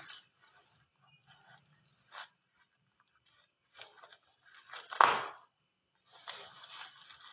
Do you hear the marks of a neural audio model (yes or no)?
no